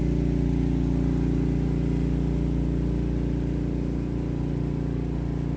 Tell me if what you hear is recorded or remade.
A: recorded